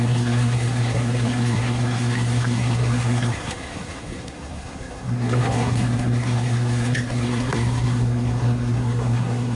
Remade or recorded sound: remade